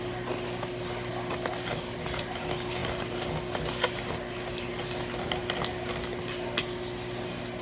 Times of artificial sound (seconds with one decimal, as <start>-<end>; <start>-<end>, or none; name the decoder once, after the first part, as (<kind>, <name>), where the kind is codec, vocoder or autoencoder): none